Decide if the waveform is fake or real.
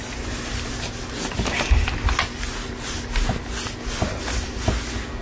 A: real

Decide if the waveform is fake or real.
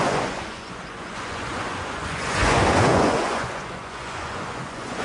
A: fake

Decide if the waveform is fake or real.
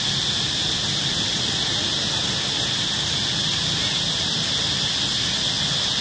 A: real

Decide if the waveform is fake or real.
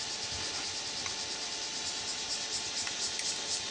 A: real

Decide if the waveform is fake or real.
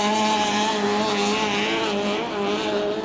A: real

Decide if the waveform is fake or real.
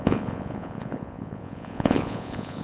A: fake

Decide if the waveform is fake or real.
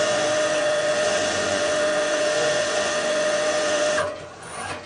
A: fake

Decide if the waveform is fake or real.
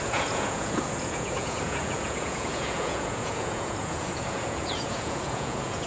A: fake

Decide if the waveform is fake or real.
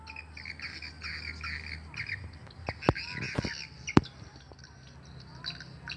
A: real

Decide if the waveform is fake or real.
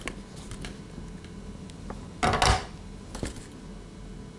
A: real